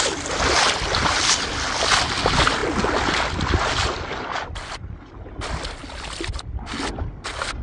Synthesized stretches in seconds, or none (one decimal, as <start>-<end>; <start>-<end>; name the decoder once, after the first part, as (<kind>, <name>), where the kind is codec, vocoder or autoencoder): none